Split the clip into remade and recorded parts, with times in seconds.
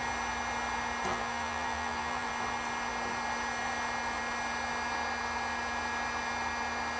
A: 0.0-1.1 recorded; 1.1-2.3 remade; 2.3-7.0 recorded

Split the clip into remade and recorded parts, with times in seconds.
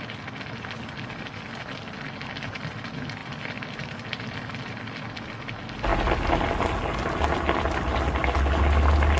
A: 0.0-9.2 recorded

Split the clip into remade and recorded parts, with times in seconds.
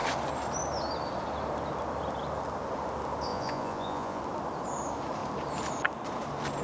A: 0.0-3.3 recorded; 3.3-4.2 remade; 4.2-6.6 recorded